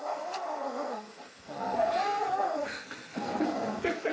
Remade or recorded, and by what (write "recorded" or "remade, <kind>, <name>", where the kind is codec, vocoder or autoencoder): remade, codec, SNAC